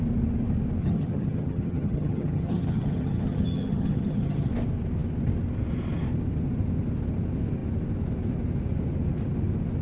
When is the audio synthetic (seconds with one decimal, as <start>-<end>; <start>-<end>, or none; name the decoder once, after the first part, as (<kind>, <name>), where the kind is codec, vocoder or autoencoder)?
0.8-4.5 (vocoder, HiFi-GAN)